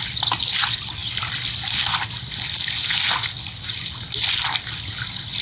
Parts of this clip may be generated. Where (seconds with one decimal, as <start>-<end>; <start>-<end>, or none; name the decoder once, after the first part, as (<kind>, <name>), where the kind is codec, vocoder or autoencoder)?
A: none